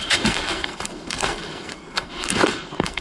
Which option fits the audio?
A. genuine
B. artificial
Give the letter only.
B